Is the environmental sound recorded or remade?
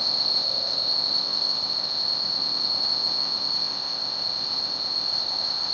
remade